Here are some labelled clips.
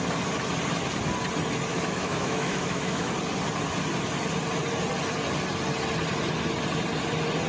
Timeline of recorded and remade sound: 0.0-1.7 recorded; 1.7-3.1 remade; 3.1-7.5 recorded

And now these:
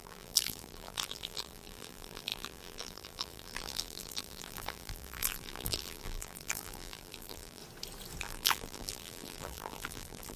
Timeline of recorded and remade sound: 0.0-7.6 remade; 7.6-8.2 recorded; 8.2-10.4 remade

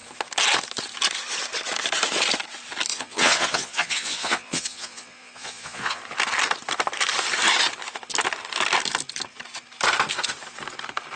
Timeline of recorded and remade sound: 0.0-2.9 recorded; 2.9-6.0 remade; 6.0-11.2 recorded

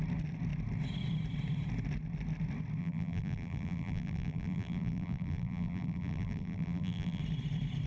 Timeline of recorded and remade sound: 0.0-2.8 recorded; 2.8-7.2 remade; 7.2-7.9 recorded

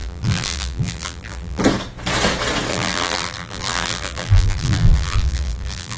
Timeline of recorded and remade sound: 0.0-1.6 remade; 1.6-2.7 recorded; 2.7-6.0 remade

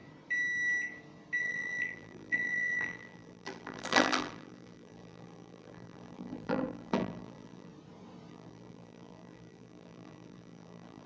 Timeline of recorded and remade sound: 0.0-1.4 recorded; 1.4-7.7 remade; 7.7-8.3 recorded; 8.3-11.1 remade

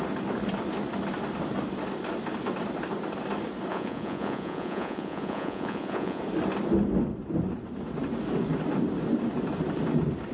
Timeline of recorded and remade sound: 0.0-3.7 recorded; 3.7-6.2 remade; 6.2-10.3 recorded